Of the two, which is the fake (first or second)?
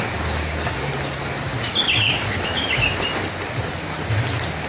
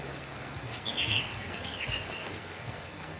second